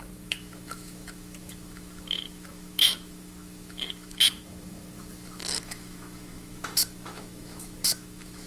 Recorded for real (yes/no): no